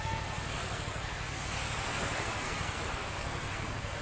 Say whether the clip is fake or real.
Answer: fake